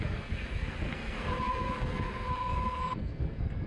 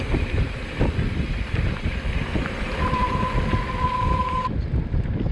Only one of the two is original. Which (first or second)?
second